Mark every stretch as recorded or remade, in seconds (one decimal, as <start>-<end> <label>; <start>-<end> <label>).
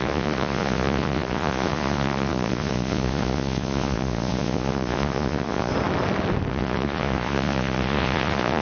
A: 0.0-5.7 remade; 5.7-6.5 recorded; 6.5-8.6 remade